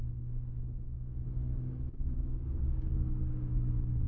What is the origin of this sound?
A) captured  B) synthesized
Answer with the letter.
B